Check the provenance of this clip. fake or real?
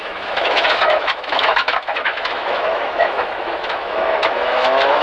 fake